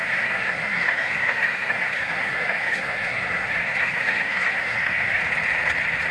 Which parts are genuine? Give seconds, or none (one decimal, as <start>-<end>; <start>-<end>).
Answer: 5.2-6.1